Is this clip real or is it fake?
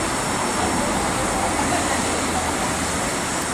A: real